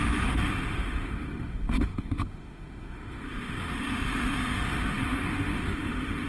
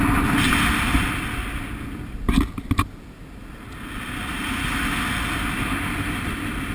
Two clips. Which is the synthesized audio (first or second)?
first